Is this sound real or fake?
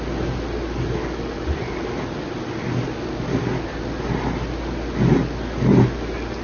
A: real